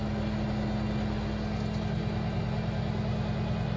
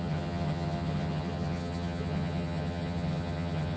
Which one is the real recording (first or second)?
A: first